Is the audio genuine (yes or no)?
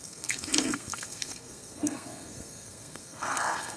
no